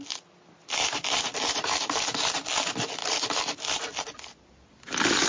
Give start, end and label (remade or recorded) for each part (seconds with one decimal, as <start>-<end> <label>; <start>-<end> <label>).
0.0-1.3 recorded; 1.3-2.1 remade; 2.1-3.0 recorded; 3.0-4.0 remade; 4.0-5.3 recorded